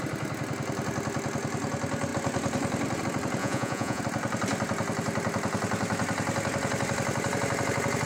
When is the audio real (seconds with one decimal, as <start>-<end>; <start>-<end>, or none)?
0.0-3.4; 4.0-8.1